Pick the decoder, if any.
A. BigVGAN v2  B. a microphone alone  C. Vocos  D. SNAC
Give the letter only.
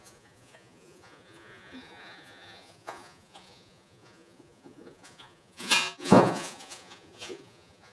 C